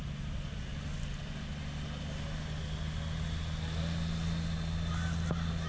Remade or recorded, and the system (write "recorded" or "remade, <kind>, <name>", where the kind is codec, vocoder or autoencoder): recorded